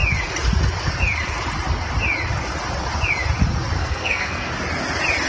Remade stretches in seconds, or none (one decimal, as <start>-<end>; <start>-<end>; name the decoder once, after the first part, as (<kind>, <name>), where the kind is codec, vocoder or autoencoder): 3.8-4.5 (codec, SNAC)